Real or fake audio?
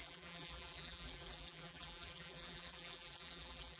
fake